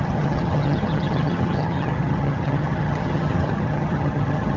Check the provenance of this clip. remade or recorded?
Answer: remade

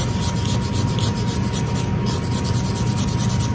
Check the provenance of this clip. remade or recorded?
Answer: recorded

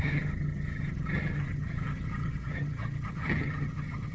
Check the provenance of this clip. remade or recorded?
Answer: remade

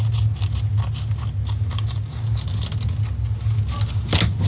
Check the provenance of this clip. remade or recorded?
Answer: recorded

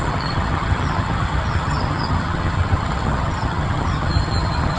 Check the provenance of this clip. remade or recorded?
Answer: remade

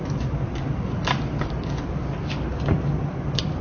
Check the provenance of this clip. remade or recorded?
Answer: recorded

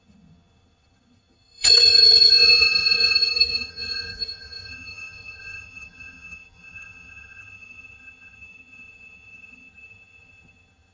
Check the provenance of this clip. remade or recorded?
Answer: remade